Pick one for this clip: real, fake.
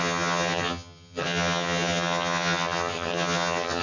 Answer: fake